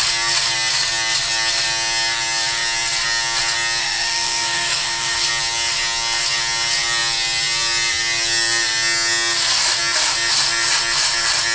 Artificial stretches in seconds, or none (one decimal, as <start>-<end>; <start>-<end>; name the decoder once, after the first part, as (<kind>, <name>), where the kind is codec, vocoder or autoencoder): 3.8-5.3 (codec, SNAC)